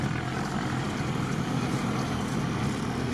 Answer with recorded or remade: recorded